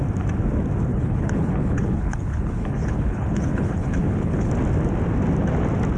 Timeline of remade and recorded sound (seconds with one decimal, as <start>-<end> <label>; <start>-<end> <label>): 0.0-0.9 recorded; 0.9-4.5 remade; 4.5-6.0 recorded